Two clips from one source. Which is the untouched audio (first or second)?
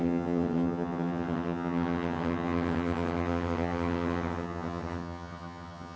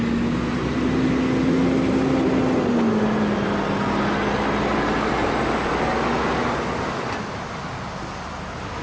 second